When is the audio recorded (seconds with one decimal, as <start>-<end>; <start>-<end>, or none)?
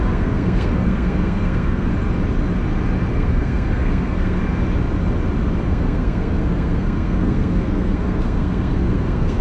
1.9-3.1; 4.4-5.6